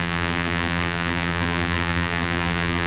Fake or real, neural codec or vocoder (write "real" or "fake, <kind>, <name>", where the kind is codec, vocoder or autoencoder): fake, vocoder, BigVGAN v2